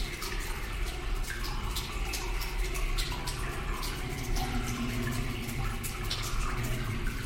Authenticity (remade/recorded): recorded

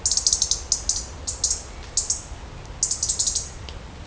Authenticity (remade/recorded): recorded